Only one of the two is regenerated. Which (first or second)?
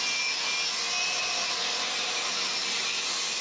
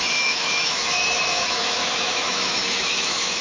second